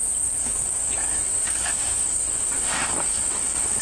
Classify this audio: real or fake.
fake